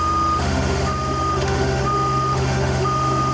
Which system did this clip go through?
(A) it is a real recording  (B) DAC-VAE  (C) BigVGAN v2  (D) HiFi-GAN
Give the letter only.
B